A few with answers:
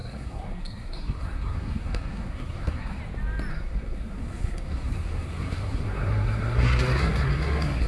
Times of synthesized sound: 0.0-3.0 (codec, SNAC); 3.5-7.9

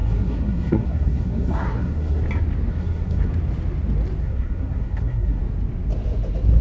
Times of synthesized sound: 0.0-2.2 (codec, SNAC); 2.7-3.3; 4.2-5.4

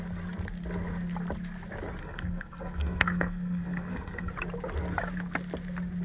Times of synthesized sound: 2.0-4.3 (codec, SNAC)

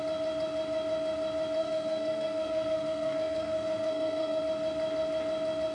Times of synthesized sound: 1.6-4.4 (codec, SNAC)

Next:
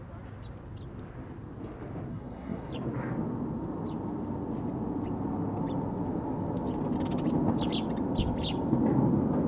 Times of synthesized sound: 2.1-2.7 (codec, SNAC)